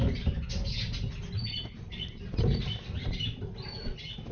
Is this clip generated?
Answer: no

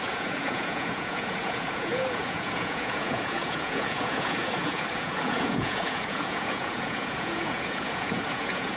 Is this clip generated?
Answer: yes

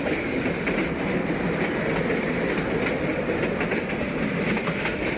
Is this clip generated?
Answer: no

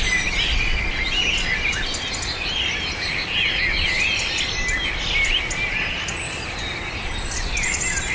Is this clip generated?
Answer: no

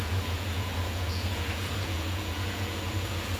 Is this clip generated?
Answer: yes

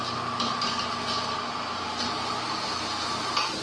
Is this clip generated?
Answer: no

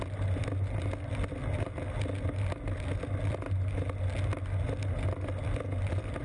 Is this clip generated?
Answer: no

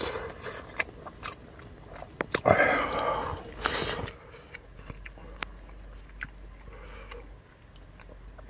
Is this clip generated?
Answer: no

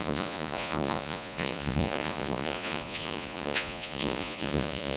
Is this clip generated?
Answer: yes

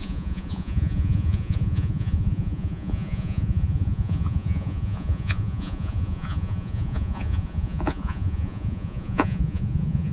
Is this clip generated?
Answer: yes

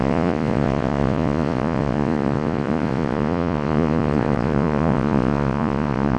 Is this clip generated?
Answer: yes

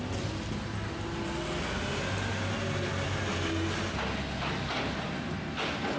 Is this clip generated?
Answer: no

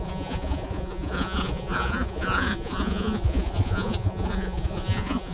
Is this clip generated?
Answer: yes